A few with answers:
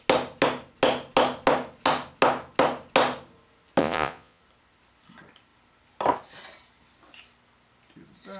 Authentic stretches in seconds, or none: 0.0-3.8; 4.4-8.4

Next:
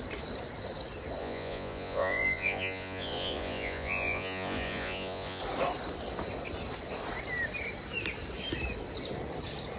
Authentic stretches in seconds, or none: 0.0-1.2; 5.4-9.8

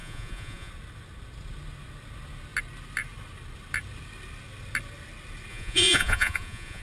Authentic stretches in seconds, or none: 0.7-5.5

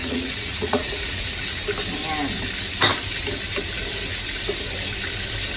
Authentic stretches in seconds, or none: 1.6-5.6

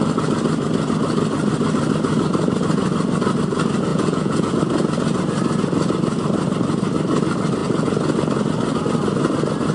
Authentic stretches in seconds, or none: 0.0-3.9; 4.5-9.7

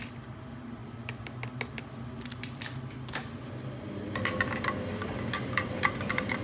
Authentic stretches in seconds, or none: 0.0-6.4

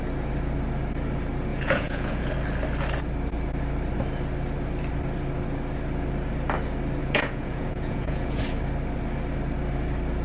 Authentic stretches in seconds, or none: 0.0-1.5; 2.3-7.0; 8.4-10.2